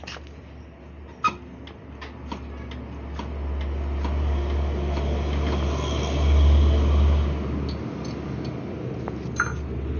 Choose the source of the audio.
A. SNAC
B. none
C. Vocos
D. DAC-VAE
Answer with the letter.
B